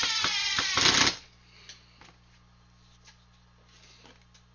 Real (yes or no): yes